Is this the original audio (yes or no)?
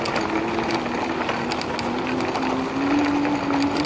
yes